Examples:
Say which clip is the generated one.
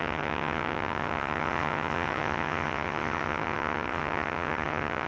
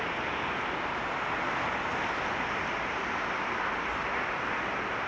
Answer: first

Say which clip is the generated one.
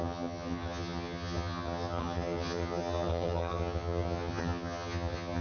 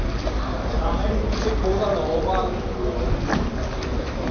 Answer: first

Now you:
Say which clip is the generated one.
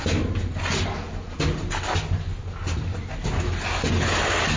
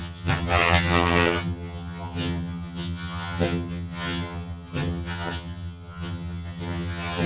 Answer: second